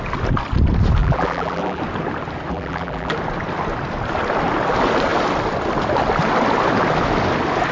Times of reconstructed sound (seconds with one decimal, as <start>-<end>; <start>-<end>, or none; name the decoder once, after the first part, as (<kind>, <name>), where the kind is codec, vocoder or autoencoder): 1.0-1.8 (vocoder, BigVGAN v2); 2.5-3.1